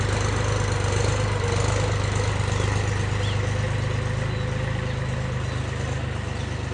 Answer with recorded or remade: recorded